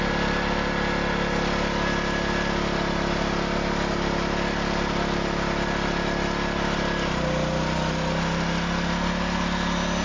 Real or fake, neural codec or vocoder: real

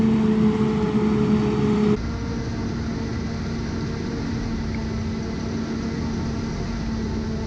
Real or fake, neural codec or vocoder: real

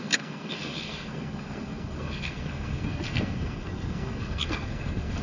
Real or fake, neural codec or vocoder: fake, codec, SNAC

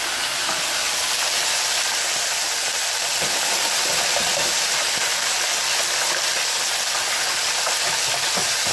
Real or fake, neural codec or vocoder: real